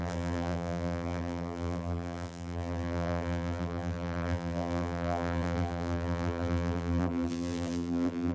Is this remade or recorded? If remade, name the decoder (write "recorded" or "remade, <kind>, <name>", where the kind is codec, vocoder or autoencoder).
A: remade, vocoder, BigVGAN v2